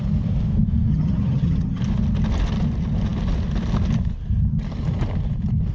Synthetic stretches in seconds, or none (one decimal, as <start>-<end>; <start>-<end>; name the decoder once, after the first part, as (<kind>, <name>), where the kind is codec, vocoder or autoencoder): 0.9-1.8 (vocoder, HiFi-GAN)